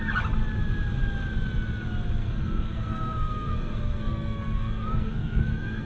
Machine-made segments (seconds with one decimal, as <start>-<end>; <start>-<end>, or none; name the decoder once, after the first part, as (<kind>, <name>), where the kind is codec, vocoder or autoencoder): 2.2-5.9 (codec, SNAC)